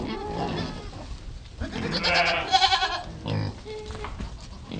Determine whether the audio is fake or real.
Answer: real